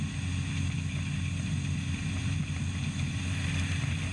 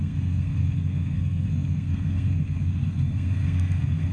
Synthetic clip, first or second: second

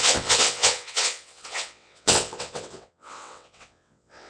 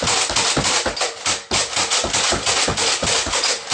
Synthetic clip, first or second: first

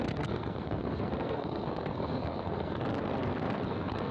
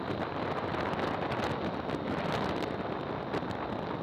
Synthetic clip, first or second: first